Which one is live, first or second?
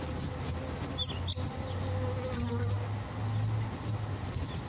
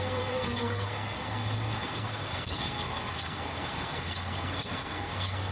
first